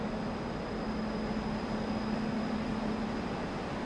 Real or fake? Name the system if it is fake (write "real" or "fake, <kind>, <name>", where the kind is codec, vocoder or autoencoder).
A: real